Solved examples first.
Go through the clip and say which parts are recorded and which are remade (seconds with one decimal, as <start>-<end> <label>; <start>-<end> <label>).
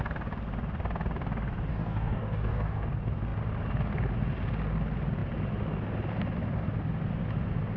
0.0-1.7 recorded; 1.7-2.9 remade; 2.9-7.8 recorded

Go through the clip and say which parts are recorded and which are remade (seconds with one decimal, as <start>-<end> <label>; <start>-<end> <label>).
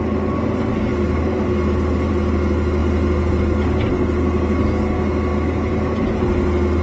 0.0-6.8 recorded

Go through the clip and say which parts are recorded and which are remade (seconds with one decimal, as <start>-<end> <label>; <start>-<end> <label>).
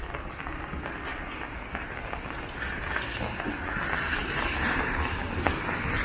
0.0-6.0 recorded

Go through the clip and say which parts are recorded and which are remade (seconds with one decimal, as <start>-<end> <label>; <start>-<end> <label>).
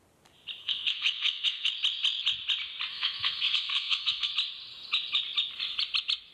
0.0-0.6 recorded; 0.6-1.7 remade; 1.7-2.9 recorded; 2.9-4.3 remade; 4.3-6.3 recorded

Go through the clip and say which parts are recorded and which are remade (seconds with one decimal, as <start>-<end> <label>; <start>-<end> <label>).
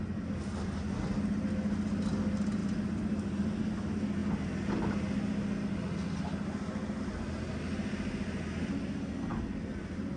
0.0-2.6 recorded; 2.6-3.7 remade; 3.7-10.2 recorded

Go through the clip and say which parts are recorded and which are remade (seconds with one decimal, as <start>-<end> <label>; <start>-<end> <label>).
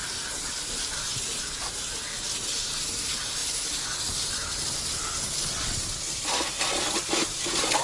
0.0-2.6 recorded; 2.6-3.4 remade; 3.4-6.7 recorded; 6.7-7.8 remade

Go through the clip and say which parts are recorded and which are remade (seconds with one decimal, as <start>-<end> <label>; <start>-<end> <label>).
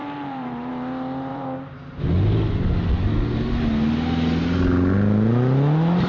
0.0-0.7 remade; 0.7-1.3 recorded; 1.3-2.0 remade; 2.0-6.1 recorded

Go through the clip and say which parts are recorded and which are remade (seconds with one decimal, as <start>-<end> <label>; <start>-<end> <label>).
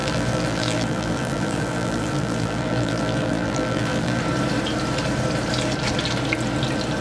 0.0-4.2 remade; 4.2-7.0 recorded